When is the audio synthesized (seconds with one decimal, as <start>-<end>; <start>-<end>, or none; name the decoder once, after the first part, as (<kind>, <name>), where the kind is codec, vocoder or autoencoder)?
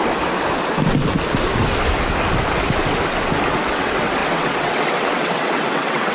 3.7-6.1 (vocoder, WaveNeXt)